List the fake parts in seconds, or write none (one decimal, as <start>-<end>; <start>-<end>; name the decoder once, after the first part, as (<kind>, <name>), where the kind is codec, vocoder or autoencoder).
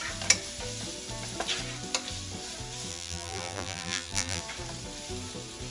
2.9-4.4 (vocoder, BigVGAN v2)